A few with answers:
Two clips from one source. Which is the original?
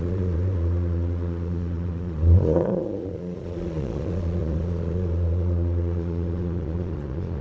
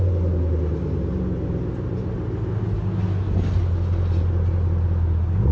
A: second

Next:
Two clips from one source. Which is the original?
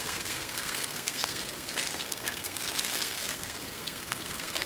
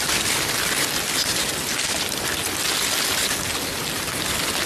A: second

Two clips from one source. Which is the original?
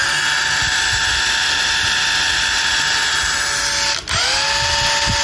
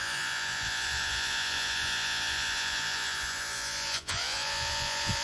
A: first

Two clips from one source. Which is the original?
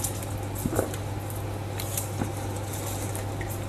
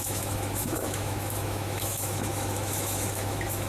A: first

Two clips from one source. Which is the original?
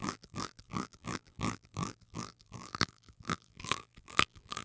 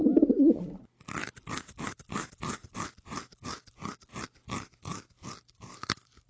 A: second